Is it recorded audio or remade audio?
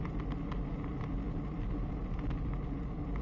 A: recorded